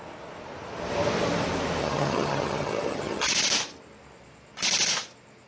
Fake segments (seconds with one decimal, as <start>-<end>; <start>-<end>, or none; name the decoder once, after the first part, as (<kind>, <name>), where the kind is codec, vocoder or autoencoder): 1.8-3.3 (vocoder, HiFi-GAN)